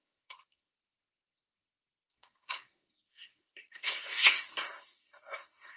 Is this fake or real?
fake